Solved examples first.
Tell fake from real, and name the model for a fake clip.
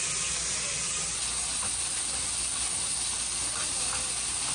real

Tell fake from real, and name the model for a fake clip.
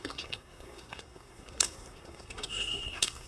fake, codec, SNAC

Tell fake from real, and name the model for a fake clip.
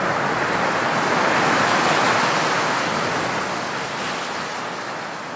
real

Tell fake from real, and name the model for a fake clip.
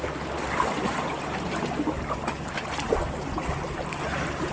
real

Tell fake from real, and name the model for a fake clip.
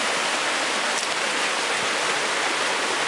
real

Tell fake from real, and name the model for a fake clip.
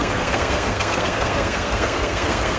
fake, codec, SNAC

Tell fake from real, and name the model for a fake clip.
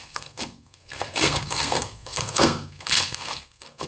fake, codec, SNAC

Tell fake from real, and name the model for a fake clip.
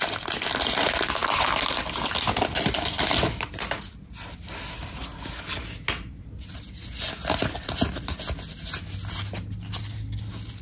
real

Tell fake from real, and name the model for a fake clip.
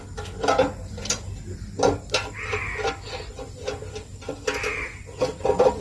real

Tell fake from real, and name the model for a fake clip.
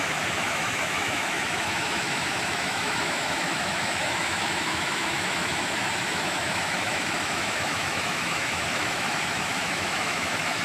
fake, autoencoder, DAC-VAE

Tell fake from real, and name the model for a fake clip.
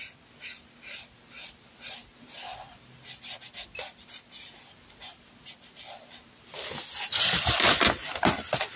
real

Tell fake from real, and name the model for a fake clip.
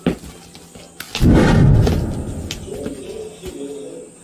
real